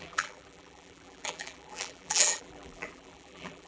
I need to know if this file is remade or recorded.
remade